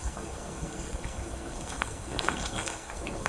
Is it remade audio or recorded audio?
remade